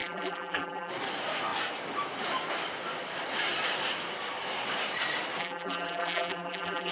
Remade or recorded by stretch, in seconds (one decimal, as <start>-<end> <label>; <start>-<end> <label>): 0.0-0.9 remade; 0.9-5.4 recorded; 5.4-6.9 remade